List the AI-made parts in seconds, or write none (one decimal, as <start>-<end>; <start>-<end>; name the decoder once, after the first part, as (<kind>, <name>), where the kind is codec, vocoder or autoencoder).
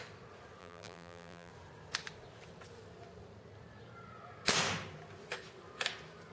0.6-1.5 (vocoder, BigVGAN v2)